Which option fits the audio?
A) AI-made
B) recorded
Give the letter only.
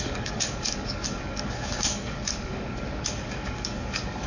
A